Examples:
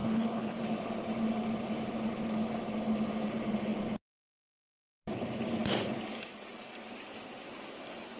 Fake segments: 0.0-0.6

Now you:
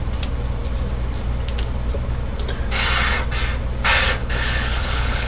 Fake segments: 4.2-5.3

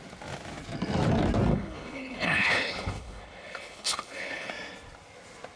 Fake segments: 1.5-4.5

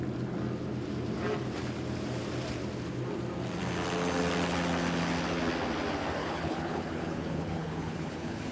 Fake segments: 6.2-8.5

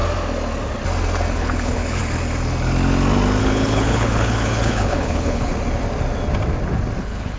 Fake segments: 1.3-2.0; 3.4-5.5; 7.0-7.4

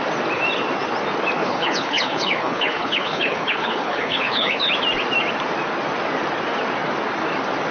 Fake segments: 1.4-4.7

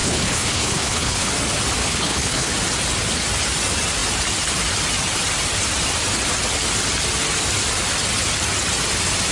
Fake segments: 0.0-1.3; 1.8-2.5